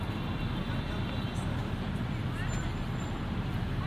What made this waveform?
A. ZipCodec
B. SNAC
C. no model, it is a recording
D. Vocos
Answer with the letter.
C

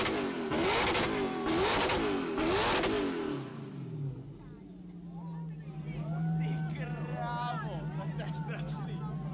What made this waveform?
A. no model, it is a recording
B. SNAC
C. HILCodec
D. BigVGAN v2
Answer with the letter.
A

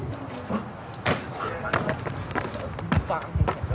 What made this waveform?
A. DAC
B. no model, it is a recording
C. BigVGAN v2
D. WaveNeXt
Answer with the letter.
B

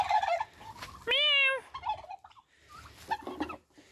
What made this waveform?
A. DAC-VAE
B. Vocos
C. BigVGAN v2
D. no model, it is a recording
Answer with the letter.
D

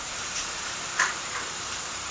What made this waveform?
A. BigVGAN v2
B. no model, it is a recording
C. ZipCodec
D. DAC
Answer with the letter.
A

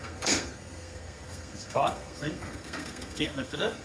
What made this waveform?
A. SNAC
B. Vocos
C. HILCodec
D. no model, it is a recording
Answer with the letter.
A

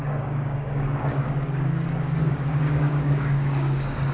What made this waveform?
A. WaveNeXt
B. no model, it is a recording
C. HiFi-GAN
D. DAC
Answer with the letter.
D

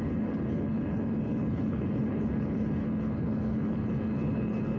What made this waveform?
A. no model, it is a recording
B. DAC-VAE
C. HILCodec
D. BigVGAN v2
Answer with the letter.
C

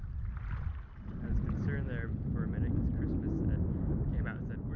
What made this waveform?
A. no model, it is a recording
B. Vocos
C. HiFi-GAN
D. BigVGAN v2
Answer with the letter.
A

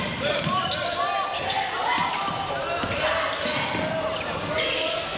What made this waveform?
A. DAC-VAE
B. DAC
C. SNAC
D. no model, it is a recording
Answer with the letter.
D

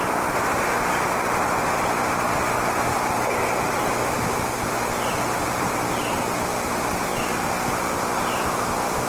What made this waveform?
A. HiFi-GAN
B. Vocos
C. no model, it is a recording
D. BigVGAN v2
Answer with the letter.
C